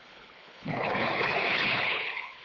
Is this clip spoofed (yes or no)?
yes